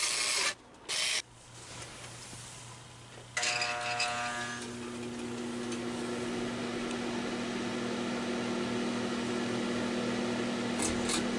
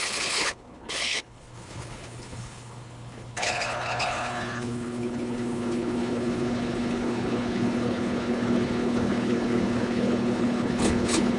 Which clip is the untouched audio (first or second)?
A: first